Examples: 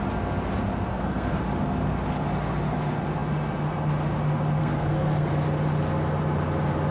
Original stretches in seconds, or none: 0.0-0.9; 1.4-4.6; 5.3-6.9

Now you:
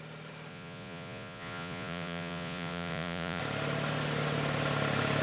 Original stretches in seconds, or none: 0.0-0.5; 3.4-5.2

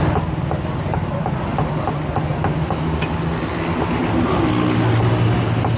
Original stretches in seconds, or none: 0.0-5.8

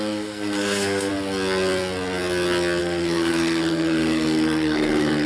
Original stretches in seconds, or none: 1.1-2.8

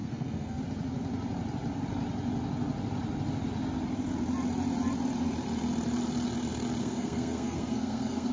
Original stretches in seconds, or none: 0.6-6.8

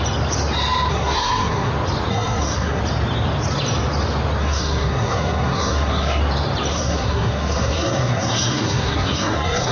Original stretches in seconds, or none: 0.0-0.9; 1.7-2.1; 2.8-4.4; 6.2-6.7

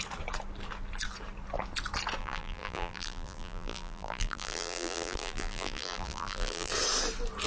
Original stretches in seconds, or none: 0.0-2.2; 6.7-7.5

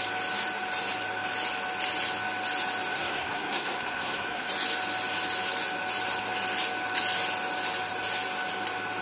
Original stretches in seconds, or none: 0.0-2.9; 4.5-9.0